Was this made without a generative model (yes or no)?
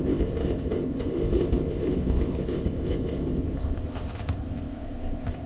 no